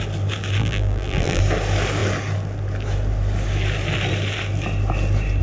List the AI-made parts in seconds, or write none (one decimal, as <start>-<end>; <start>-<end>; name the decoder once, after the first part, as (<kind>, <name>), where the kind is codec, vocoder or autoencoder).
0.6-1.4 (vocoder, BigVGAN v2)